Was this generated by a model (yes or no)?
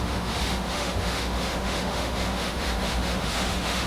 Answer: yes